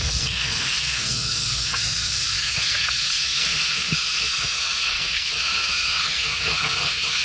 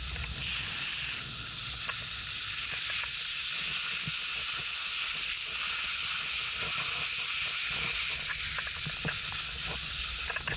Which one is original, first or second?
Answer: second